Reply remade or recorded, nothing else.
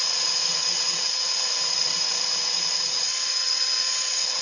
remade